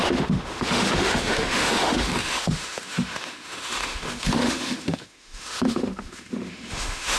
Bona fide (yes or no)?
no